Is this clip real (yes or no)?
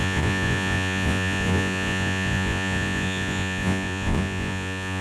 no